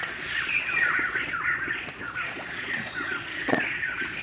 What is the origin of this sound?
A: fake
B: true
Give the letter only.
A